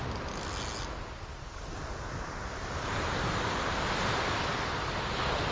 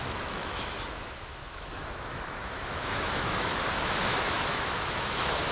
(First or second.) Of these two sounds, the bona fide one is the first